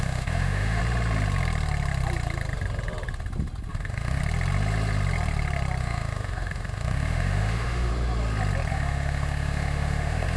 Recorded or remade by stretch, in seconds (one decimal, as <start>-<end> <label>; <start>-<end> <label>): 0.0-0.8 remade; 0.8-3.7 recorded; 3.7-4.2 remade; 4.2-5.8 recorded; 5.8-7.9 remade; 7.9-8.7 recorded; 8.7-10.4 remade